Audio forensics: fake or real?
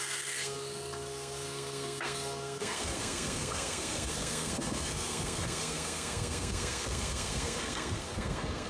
fake